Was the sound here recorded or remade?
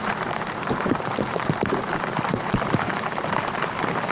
remade